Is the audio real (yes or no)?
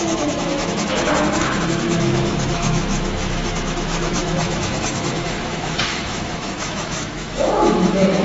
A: no